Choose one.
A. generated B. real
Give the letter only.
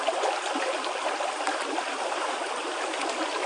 B